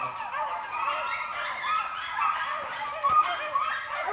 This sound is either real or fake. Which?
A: real